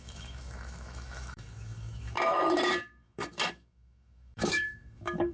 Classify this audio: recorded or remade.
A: remade